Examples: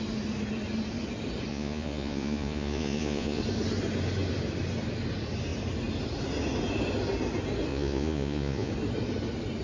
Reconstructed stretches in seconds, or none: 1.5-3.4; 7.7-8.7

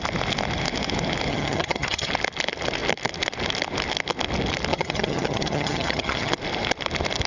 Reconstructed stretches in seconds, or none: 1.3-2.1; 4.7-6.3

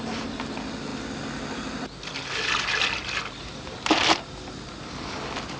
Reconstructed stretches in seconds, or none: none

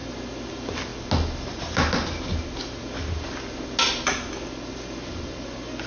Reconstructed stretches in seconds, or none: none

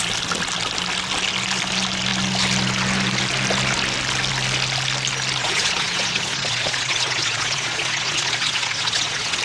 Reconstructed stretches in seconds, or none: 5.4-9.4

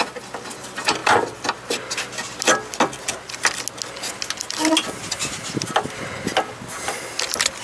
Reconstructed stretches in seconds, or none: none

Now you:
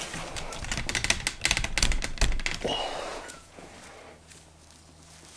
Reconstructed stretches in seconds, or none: 3.1-3.7

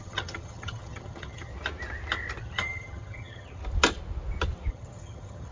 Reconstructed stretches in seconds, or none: 0.0-1.5; 2.4-3.6; 4.7-5.5